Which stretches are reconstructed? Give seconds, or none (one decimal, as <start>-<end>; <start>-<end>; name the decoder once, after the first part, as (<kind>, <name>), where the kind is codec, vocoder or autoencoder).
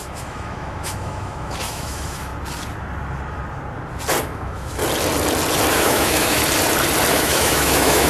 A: 0.0-2.3 (autoencoder, DAC-VAE); 4.2-4.8; 5.7-6.4; 7.1-8.1